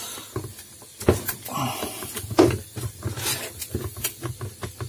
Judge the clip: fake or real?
real